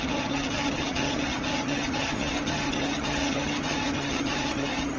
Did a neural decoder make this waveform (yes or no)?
yes